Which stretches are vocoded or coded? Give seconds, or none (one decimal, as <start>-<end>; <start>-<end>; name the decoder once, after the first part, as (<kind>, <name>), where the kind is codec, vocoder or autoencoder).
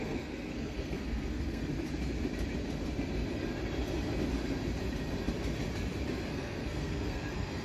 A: 0.0-1.7 (codec, SNAC); 6.3-7.6